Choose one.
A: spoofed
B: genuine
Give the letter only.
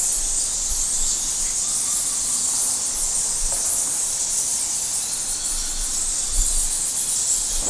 B